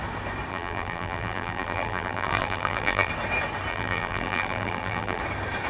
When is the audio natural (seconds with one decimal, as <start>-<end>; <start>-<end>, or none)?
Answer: 0.0-0.5; 3.1-3.7; 5.2-5.7